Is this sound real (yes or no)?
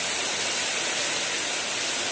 yes